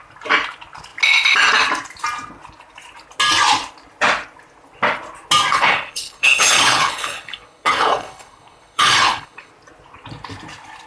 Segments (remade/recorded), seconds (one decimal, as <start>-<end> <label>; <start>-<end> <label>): 0.0-5.5 recorded; 5.5-9.5 remade; 9.5-10.9 recorded